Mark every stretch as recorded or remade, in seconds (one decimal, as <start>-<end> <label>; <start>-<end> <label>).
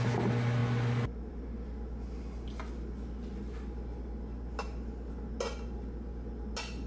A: 0.0-6.9 recorded